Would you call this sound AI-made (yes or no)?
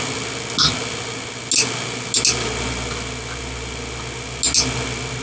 no